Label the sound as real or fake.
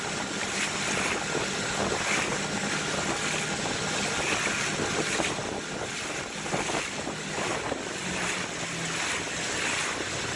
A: real